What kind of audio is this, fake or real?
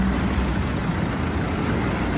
real